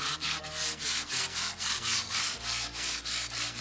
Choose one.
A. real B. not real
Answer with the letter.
B